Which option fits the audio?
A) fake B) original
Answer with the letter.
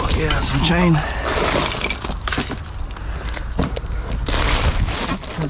B